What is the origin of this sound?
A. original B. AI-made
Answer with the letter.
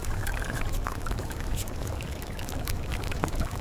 B